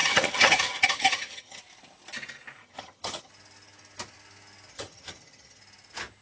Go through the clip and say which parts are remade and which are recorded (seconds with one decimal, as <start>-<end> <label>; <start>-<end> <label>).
0.0-1.6 remade; 1.6-2.6 recorded; 2.6-3.3 remade; 3.3-4.7 recorded; 4.7-5.6 remade; 5.6-6.2 recorded